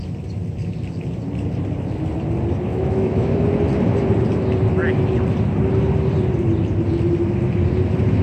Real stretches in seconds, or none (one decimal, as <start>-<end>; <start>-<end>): 0.0-2.7; 3.4-8.2